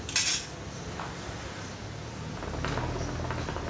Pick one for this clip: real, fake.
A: real